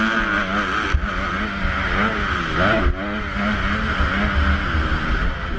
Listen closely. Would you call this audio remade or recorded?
recorded